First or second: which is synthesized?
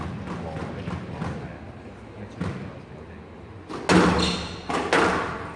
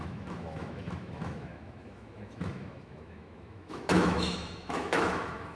second